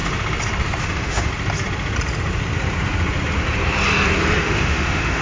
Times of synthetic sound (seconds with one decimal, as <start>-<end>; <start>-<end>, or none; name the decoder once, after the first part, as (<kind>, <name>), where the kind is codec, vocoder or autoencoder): 0.8-1.3 (autoencoder, DAC-VAE); 4.4-5.2